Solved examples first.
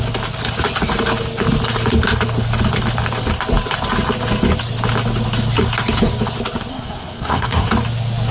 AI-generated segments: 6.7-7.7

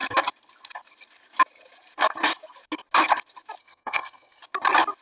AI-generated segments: 3.6-4.4

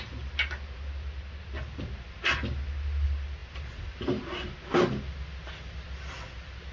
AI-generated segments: none